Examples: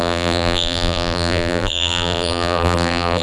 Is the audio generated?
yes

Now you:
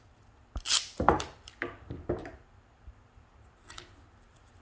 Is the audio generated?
yes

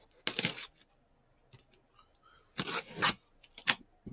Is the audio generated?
no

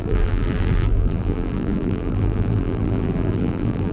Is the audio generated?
yes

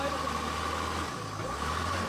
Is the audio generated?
no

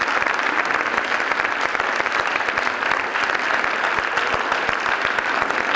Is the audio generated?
yes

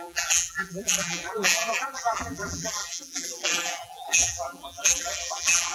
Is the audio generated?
yes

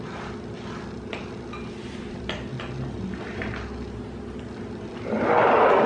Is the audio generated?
no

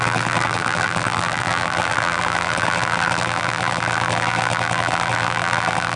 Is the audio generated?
yes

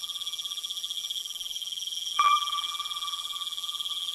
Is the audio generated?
yes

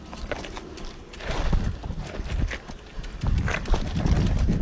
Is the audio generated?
yes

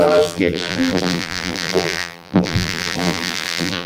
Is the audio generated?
yes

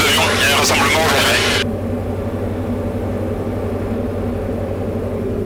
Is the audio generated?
no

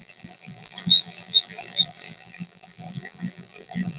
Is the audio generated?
yes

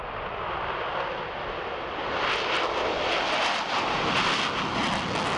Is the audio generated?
no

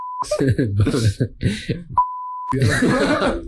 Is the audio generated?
yes